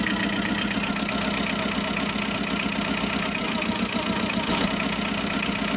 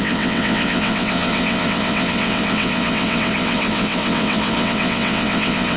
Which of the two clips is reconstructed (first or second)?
second